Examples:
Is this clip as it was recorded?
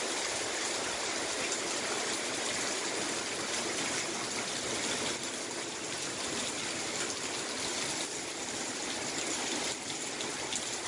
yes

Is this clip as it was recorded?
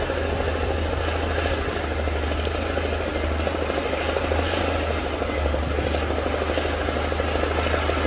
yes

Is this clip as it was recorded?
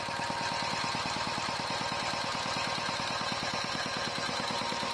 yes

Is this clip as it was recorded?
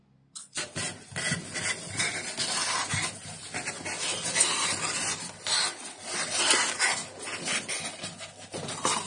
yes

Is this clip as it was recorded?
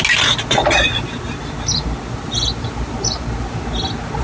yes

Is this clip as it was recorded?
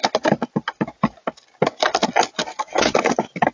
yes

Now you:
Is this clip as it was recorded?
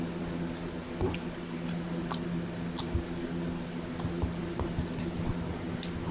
yes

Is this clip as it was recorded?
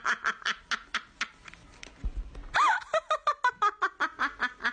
yes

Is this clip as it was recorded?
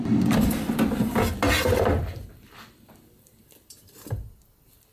yes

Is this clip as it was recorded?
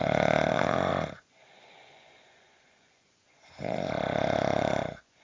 no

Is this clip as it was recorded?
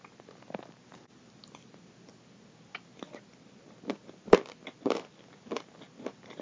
yes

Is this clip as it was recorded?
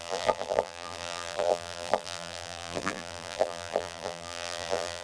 no